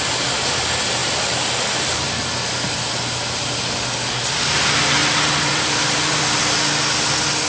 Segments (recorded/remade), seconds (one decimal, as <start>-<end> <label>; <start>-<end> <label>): 0.0-1.0 recorded; 1.0-2.2 remade; 2.2-5.0 recorded; 5.0-6.2 remade; 6.2-7.5 recorded

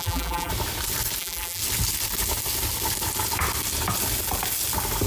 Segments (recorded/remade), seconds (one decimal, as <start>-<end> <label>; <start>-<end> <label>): 0.0-0.5 remade; 0.5-1.2 recorded; 1.2-1.6 remade; 1.6-5.1 recorded

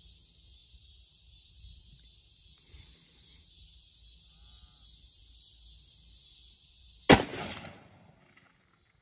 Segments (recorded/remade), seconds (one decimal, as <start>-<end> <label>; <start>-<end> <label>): 0.0-0.6 recorded; 0.6-1.5 remade; 1.5-7.3 recorded; 7.3-8.6 remade; 8.6-9.0 recorded

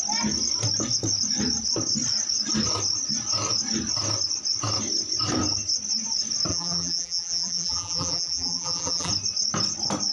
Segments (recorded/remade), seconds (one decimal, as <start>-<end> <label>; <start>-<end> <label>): 0.0-6.5 recorded; 6.5-9.1 remade; 9.1-10.1 recorded

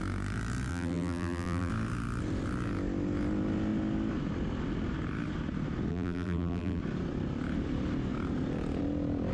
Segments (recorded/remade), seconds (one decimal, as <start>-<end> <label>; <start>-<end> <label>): 0.0-0.7 recorded; 0.7-1.7 remade; 1.7-5.9 recorded; 5.9-6.8 remade; 6.8-9.3 recorded

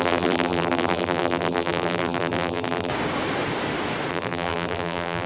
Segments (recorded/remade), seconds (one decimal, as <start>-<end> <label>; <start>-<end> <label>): 0.0-2.9 remade; 2.9-4.1 recorded; 4.1-5.3 remade

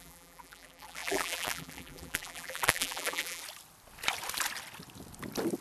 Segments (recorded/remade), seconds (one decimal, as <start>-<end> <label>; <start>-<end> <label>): 0.0-3.4 remade; 3.4-5.6 recorded

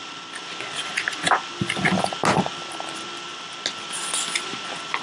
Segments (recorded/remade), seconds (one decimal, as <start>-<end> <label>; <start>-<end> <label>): 0.0-5.0 recorded